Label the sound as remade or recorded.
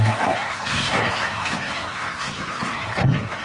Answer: remade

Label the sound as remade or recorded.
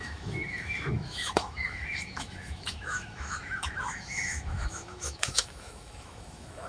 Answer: remade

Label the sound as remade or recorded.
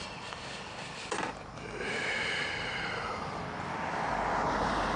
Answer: recorded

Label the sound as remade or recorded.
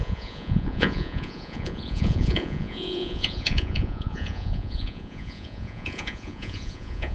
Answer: remade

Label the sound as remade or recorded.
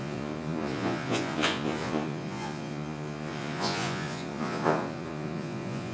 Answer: remade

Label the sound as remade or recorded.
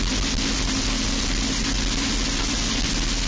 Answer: recorded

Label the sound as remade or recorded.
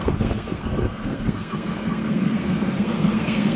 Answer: remade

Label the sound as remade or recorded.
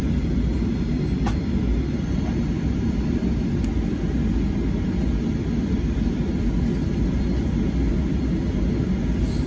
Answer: recorded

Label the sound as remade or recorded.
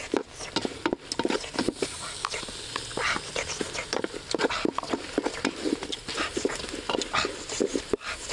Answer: recorded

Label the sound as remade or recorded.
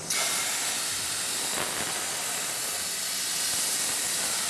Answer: recorded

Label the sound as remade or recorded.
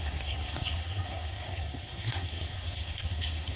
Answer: remade